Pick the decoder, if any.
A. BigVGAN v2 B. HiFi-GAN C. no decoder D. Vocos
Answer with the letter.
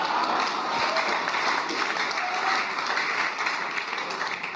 C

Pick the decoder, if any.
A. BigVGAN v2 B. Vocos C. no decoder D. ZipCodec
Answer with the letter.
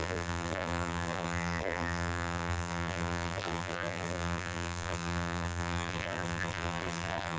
A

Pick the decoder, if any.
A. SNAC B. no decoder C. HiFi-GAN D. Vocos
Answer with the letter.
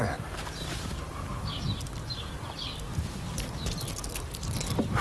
B